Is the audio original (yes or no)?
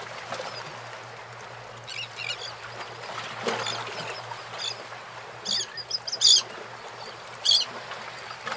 yes